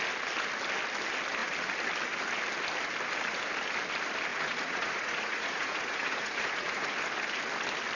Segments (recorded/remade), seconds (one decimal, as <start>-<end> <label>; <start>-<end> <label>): 0.0-4.3 recorded; 4.3-6.9 remade; 6.9-8.0 recorded